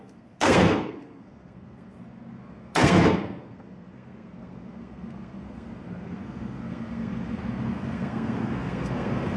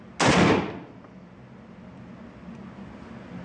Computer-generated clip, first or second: first